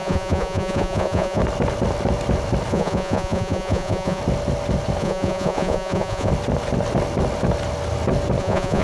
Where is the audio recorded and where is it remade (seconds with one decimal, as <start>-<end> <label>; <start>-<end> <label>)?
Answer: 0.0-1.4 remade; 1.4-2.7 recorded; 2.7-4.2 remade; 4.2-5.0 recorded; 5.0-6.3 remade; 6.3-8.4 recorded; 8.4-8.8 remade